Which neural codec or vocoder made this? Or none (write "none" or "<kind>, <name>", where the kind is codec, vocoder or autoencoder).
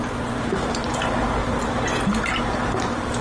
none